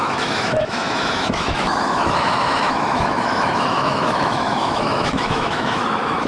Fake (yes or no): yes